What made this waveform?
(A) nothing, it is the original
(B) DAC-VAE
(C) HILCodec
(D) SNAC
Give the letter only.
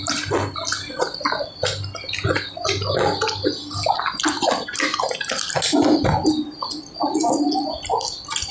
A